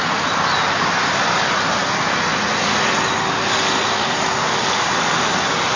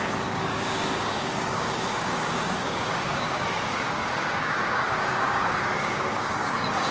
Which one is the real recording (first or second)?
first